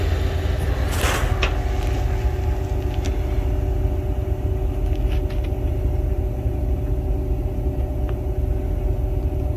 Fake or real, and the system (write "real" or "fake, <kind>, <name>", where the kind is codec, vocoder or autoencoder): real